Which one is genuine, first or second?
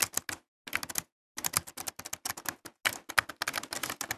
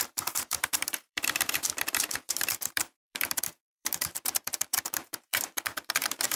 first